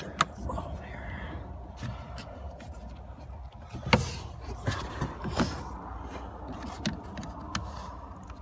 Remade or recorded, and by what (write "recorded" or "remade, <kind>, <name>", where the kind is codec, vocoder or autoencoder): recorded